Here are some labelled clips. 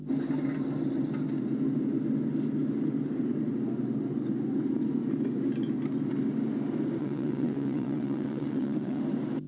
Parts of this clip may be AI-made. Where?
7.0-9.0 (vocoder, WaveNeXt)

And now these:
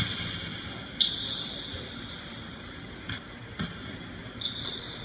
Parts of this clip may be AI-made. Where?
none

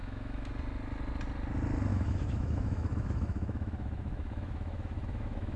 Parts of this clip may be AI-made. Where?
0.0-0.5 (autoencoder, DAC-VAE); 1.9-5.6